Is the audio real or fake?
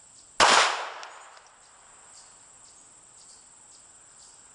real